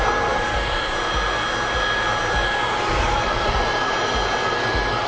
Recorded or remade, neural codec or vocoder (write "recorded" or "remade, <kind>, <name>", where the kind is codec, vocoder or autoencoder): recorded